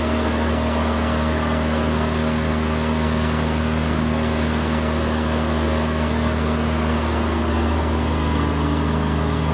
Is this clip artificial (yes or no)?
yes